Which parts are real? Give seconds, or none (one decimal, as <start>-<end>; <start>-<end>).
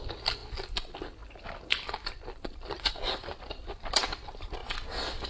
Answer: 0.4-2.6; 4.6-5.3